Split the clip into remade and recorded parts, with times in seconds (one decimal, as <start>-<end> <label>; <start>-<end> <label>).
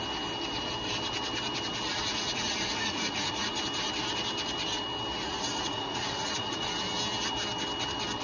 0.0-1.9 recorded; 1.9-3.6 remade; 3.6-5.2 recorded; 5.2-6.7 remade; 6.7-8.2 recorded